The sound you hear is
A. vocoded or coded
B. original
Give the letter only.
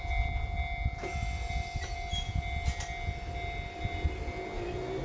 B